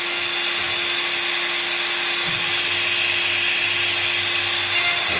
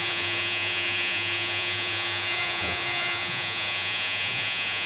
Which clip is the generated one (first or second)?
second